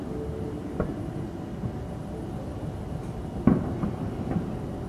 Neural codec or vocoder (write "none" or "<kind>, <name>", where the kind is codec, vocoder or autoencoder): none